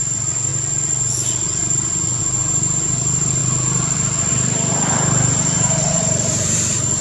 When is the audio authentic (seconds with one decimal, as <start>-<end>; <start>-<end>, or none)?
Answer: 0.5-2.2; 3.4-4.3